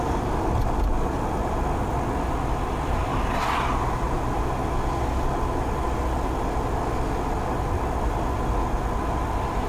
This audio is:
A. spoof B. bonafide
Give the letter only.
B